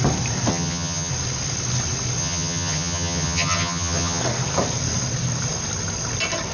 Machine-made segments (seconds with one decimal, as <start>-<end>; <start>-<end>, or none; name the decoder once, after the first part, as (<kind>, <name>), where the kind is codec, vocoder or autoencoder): 0.5-1.1 (vocoder, HiFi-GAN); 2.2-4.2